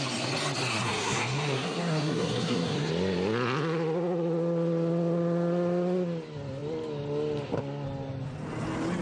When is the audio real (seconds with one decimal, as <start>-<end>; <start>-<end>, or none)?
0.0-0.7; 2.9-9.0